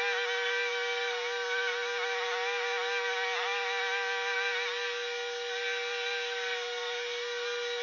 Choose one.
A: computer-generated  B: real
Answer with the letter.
B